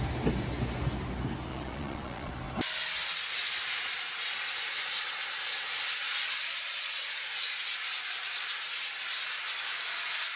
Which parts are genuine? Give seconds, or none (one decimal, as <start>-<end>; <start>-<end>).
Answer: 0.0-1.5; 2.3-10.4